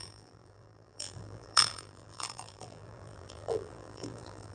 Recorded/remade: remade